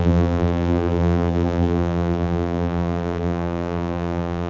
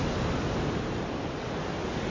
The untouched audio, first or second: second